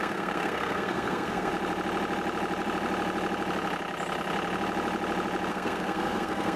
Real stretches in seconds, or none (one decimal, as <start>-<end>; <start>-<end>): 1.5-5.5